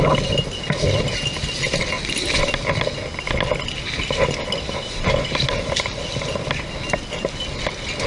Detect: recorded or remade recorded